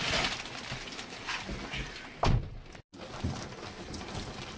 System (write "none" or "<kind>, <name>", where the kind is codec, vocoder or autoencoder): none